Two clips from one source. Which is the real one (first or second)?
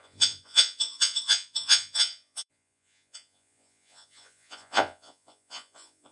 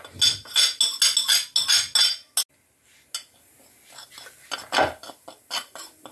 second